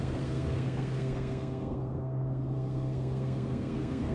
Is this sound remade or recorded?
remade